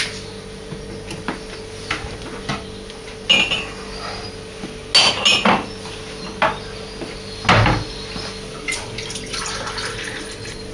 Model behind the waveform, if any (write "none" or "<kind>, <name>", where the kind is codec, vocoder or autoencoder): none